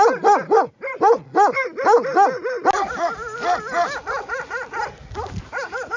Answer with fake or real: real